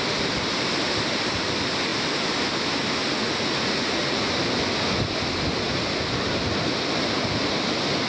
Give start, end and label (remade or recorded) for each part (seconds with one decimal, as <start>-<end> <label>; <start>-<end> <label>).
0.0-3.2 recorded; 3.2-4.4 remade; 4.4-8.1 recorded